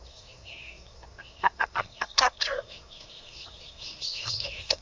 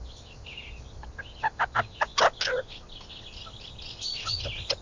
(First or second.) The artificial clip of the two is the first